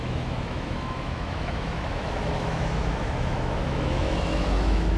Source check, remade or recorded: remade